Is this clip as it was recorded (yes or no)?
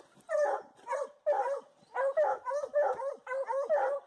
no